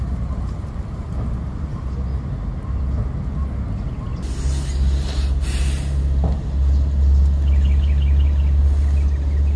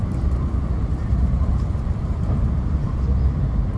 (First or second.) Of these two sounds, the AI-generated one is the second